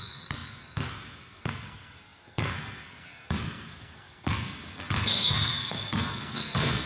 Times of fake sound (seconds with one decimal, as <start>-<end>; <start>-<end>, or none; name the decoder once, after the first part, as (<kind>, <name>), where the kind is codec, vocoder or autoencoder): 0.0-6.9 (codec, SNAC)